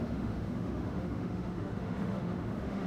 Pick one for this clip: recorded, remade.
remade